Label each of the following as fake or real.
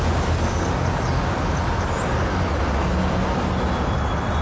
real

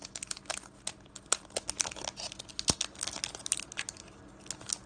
real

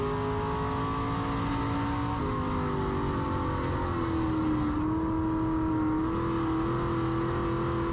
real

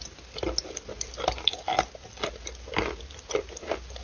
real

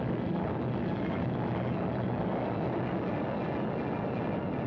real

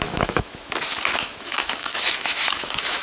fake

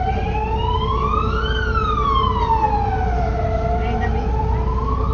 real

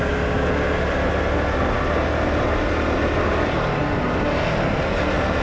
real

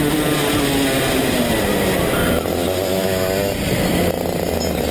real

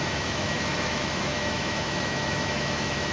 fake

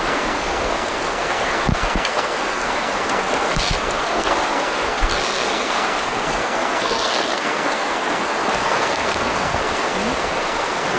fake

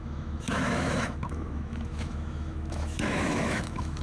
fake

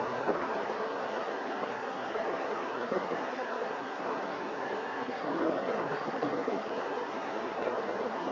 fake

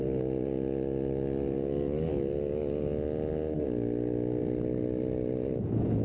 real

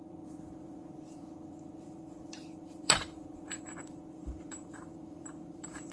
fake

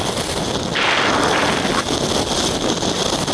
real